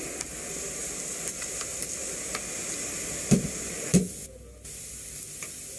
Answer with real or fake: real